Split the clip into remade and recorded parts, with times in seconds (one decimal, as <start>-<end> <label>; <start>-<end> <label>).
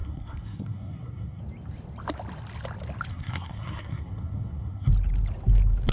0.0-1.4 remade; 1.4-3.1 recorded; 3.1-4.9 remade; 4.9-5.9 recorded